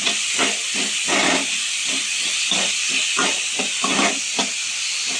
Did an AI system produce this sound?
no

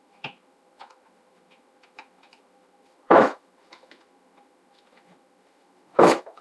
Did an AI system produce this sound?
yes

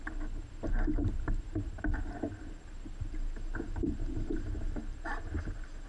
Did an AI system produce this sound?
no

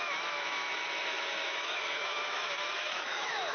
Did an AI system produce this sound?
yes